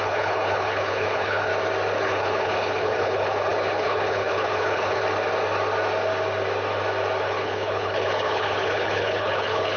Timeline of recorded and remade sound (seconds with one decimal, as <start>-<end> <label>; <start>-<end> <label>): 0.0-1.5 remade; 1.5-2.0 recorded; 2.0-5.0 remade; 5.0-7.2 recorded; 7.2-9.8 remade